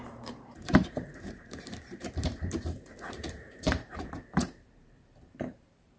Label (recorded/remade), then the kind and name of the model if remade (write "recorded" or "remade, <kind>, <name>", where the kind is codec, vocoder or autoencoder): remade, vocoder, BigVGAN v2